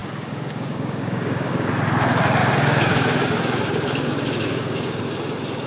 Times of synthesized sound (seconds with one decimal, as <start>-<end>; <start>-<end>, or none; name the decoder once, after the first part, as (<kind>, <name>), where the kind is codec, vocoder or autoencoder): 0.0-1.7 (codec, DAC); 2.4-5.0